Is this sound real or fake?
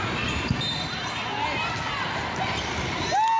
real